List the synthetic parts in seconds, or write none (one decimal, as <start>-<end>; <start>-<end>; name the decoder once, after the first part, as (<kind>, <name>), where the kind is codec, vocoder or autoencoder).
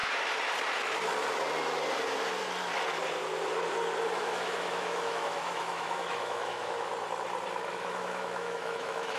4.1-6.9 (autoencoder, DAC-VAE); 7.7-9.2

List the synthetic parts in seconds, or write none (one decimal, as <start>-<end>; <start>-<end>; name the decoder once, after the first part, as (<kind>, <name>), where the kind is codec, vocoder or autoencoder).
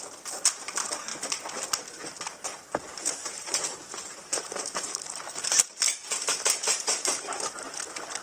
2.5-5.2 (vocoder, BigVGAN v2); 6.6-7.2